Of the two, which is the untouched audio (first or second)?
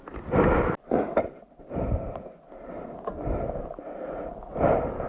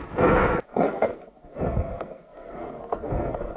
first